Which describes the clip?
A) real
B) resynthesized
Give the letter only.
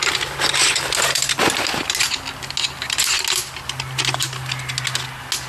A